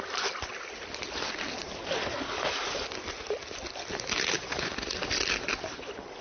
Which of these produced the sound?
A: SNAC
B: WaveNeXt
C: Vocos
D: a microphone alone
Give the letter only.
D